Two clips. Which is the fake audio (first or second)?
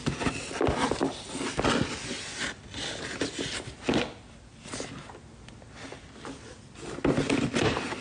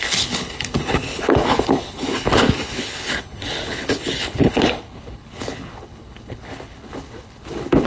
second